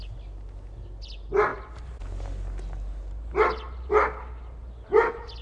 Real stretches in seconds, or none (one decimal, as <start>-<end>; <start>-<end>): 0.0-5.4